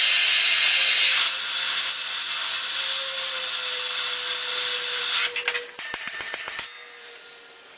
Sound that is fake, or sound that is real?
real